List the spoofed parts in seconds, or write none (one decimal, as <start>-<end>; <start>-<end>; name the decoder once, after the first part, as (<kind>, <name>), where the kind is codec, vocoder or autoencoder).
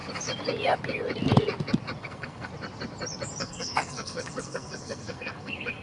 2.0-2.5 (codec, SNAC); 3.4-5.8